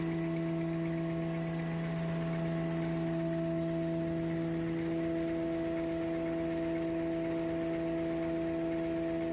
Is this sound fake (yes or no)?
no